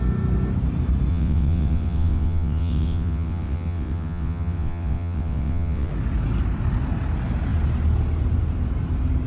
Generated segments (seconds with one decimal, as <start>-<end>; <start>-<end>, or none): 1.1-5.9